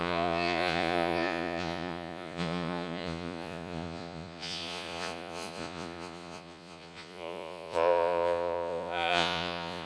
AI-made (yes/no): yes